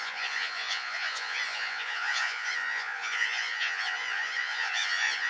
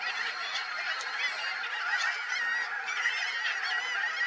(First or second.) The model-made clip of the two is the first